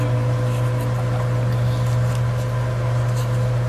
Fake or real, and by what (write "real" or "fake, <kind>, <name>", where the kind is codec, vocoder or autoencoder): real